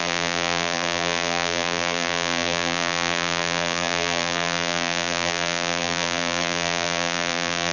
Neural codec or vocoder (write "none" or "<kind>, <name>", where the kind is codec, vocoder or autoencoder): vocoder, BigVGAN v2